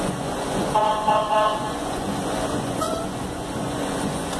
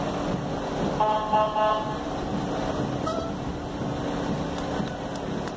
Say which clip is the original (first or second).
second